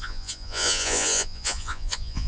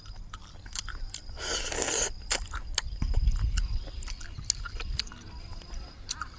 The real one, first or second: second